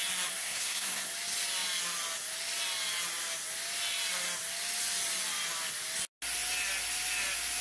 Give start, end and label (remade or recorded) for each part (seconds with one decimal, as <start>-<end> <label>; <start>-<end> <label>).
0.0-0.4 recorded; 0.4-1.1 remade; 1.1-7.6 recorded